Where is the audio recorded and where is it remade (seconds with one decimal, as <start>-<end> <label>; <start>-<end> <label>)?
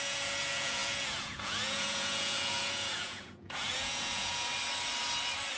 0.0-4.5 remade; 4.5-5.6 recorded